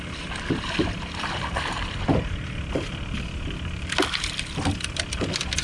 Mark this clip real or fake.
real